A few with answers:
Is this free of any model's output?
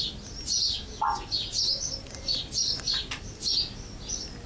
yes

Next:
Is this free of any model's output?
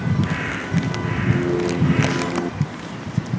yes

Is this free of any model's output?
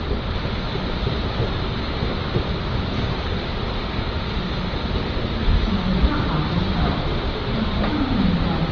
yes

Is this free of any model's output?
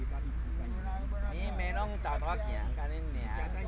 yes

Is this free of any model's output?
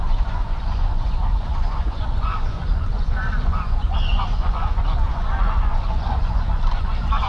no